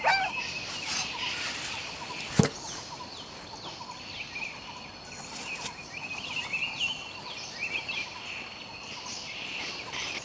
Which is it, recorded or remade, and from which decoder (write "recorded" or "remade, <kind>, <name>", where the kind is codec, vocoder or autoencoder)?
recorded